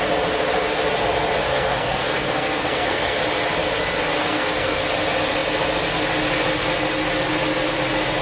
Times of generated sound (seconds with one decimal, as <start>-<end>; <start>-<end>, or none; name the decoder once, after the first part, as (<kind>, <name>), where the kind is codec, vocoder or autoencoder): 1.5-3.2 (codec, SNAC); 4.2-4.8